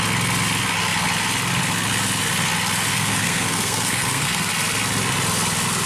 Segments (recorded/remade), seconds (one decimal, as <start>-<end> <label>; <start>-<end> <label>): 0.0-2.9 recorded; 2.9-4.5 remade; 4.5-5.9 recorded